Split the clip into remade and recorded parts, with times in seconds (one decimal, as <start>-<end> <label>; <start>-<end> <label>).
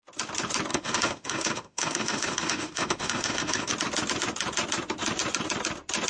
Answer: 0.0-0.7 recorded; 0.7-3.7 remade; 3.7-6.1 recorded